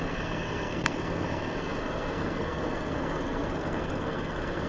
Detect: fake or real fake